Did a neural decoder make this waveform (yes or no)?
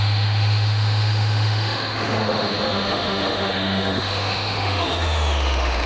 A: yes